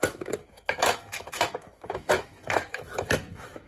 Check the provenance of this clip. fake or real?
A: fake